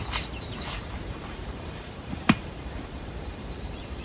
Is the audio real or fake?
fake